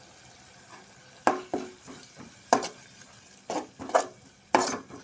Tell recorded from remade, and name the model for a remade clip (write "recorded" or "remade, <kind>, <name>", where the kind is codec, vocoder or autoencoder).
recorded